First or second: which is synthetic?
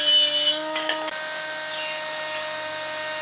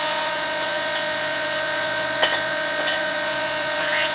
second